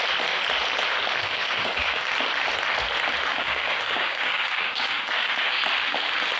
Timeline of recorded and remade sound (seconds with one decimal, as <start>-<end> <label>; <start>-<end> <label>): 0.0-1.2 recorded; 1.2-2.1 remade; 2.1-3.3 recorded; 3.3-5.6 remade; 5.6-6.4 recorded